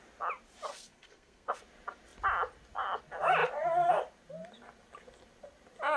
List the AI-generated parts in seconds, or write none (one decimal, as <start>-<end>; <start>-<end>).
0.7-1.6